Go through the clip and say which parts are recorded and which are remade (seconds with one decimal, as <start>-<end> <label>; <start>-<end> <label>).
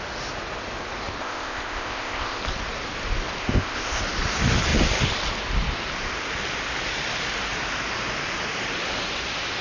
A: 0.0-1.2 recorded; 1.2-2.4 remade; 2.4-3.4 recorded; 3.4-4.0 remade; 4.0-9.6 recorded